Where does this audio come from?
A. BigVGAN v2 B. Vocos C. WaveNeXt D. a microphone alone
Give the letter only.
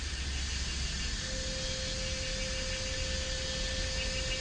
D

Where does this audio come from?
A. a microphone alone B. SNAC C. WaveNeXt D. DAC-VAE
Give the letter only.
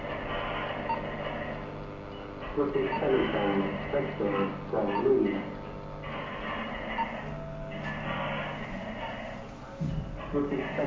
A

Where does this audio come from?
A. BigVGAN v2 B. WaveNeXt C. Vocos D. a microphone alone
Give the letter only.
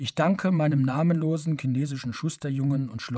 B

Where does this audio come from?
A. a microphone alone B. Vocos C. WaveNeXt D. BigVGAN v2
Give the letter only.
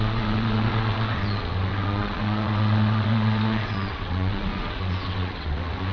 C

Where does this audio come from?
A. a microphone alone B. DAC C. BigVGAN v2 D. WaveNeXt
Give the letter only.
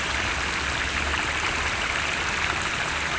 A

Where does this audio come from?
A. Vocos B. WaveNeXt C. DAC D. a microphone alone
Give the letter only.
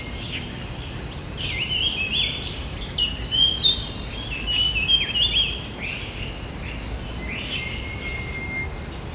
D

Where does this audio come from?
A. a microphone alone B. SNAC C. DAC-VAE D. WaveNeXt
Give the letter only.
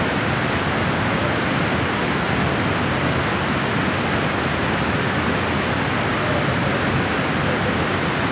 A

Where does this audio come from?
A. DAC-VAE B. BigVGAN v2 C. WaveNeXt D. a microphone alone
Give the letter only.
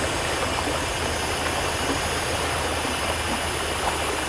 D